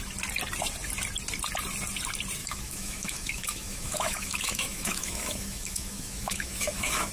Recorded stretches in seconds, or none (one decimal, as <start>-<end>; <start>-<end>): 0.0-2.4